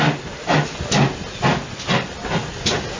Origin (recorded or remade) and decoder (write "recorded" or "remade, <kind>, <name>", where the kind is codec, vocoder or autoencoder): recorded